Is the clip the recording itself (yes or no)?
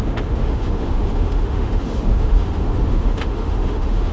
no